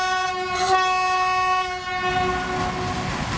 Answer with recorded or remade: recorded